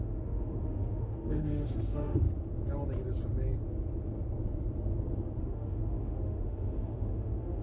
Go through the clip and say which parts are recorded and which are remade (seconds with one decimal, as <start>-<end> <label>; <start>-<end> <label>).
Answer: 0.0-2.2 remade; 2.2-5.4 recorded; 5.4-7.6 remade

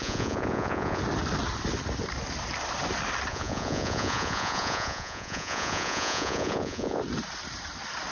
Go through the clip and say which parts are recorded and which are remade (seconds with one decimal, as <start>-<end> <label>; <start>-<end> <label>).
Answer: 0.0-1.0 remade; 1.0-3.3 recorded; 3.3-7.0 remade; 7.0-8.1 recorded

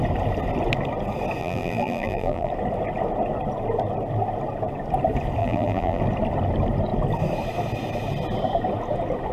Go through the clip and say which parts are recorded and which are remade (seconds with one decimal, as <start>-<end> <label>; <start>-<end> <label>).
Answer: 0.0-1.4 recorded; 1.4-2.5 remade; 2.5-5.4 recorded; 5.4-6.0 remade; 6.0-9.3 recorded

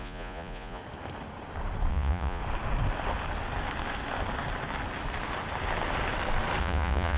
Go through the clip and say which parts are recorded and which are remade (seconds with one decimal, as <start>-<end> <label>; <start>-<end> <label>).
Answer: 0.0-0.8 remade; 0.8-1.9 recorded; 1.9-2.4 remade; 2.4-6.6 recorded; 6.6-7.2 remade

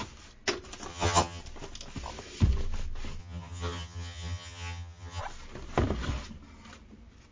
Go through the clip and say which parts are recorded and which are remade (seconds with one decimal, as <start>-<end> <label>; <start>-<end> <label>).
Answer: 0.0-0.9 recorded; 0.9-1.4 remade; 1.4-3.2 recorded; 3.2-5.2 remade; 5.2-7.3 recorded

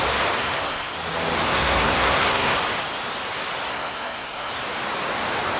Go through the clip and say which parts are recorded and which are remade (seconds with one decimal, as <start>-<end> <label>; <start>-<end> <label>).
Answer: 0.0-0.4 recorded; 0.4-0.9 remade; 0.9-1.5 recorded; 1.5-2.6 remade; 2.6-3.7 recorded; 3.7-4.5 remade; 4.5-5.6 recorded